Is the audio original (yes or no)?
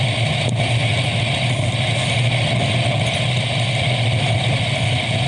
yes